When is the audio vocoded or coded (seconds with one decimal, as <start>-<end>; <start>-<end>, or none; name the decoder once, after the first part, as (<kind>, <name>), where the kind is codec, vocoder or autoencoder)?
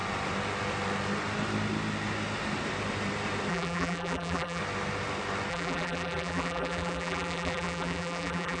3.5-4.6 (vocoder, BigVGAN v2); 5.5-8.6